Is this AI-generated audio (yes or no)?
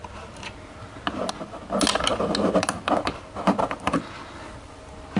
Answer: no